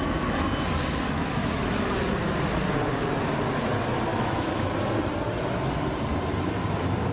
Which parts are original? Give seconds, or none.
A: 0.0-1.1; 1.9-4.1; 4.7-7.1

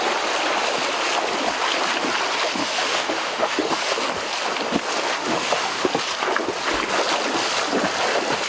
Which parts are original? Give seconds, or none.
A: 0.0-2.6; 3.9-5.2; 5.9-8.5

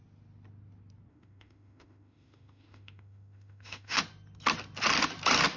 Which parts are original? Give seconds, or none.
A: 0.0-1.1; 4.0-5.6

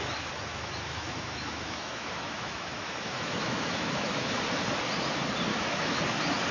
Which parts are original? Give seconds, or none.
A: 0.0-0.5; 4.4-5.5; 6.0-6.5

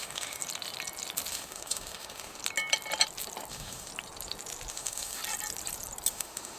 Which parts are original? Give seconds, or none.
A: 0.4-1.3; 2.4-3.5; 3.9-4.7; 5.2-6.1

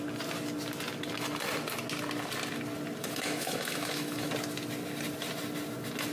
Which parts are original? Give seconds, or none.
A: 0.0-3.0; 4.3-6.1

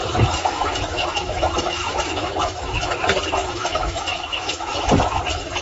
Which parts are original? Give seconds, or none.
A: 2.9-3.4; 4.8-5.6